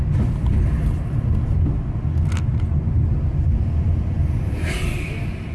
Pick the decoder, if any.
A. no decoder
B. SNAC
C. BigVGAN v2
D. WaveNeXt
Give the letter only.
A